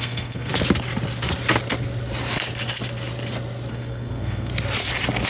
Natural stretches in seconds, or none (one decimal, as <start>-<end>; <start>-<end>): 0.5-3.7; 4.5-5.3